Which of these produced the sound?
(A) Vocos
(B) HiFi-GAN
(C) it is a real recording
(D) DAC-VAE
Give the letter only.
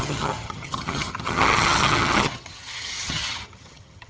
B